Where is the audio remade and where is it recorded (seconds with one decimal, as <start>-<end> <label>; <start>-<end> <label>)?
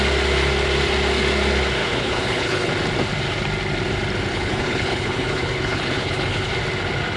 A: 0.0-1.8 recorded; 1.8-2.7 remade; 2.7-4.3 recorded; 4.3-6.5 remade; 6.5-7.2 recorded